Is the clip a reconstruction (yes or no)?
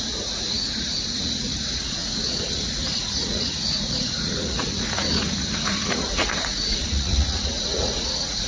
yes